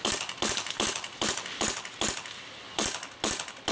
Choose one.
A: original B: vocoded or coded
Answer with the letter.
A